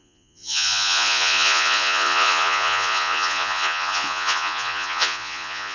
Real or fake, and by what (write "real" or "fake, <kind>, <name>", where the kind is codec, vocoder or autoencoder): fake, vocoder, Vocos